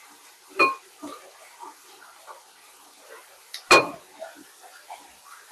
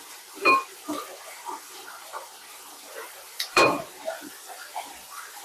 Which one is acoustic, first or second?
first